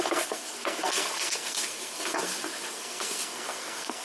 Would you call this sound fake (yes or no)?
yes